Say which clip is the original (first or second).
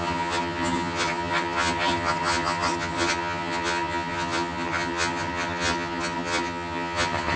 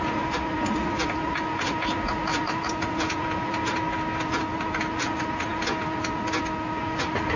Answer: second